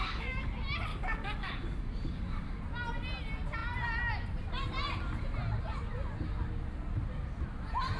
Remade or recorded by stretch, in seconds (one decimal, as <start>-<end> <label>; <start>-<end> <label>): 0.0-0.5 remade; 0.5-0.9 recorded; 0.9-2.6 remade; 2.6-8.0 recorded